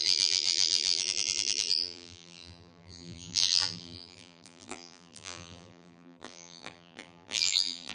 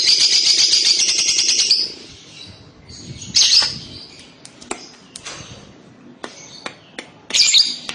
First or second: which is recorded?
second